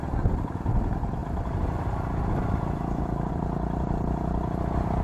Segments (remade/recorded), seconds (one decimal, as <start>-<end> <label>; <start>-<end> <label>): 0.0-5.0 recorded

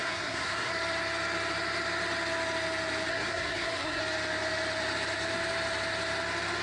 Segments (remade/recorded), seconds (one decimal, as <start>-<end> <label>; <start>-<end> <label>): 0.0-0.7 remade; 0.7-3.1 recorded; 3.1-4.0 remade; 4.0-6.6 recorded

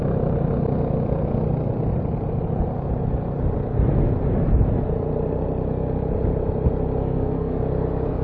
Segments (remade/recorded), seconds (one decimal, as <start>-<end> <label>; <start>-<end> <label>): 0.0-7.0 recorded; 7.0-7.6 remade; 7.6-8.2 recorded

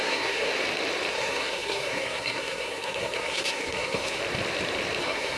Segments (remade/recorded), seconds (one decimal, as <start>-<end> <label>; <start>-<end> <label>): 0.0-0.5 remade; 0.5-1.1 recorded; 1.1-4.2 remade; 4.2-5.0 recorded; 5.0-5.4 remade